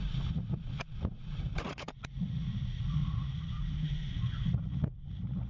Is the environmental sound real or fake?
fake